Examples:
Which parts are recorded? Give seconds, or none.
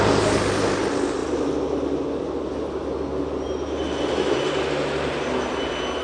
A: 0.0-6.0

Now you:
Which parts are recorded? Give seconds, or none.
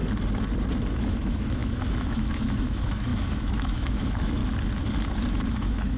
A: 0.0-0.9; 4.4-5.3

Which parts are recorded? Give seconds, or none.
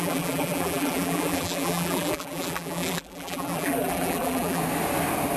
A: 4.6-5.4